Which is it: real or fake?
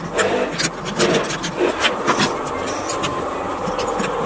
real